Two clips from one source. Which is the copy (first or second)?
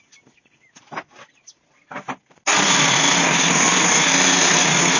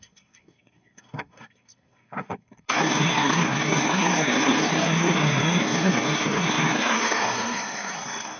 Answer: second